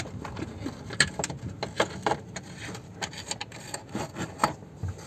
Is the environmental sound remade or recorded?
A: recorded